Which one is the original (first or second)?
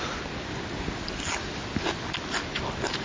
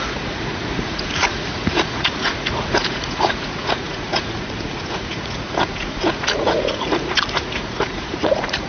first